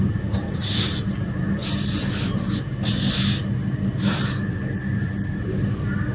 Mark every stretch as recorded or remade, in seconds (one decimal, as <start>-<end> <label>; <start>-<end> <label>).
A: 0.0-6.1 recorded